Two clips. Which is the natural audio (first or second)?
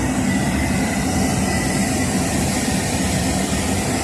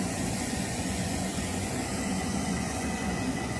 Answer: first